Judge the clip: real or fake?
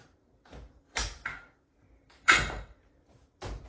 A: fake